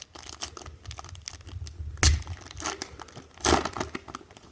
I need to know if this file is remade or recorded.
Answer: recorded